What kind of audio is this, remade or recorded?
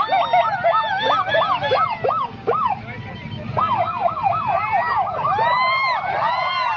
recorded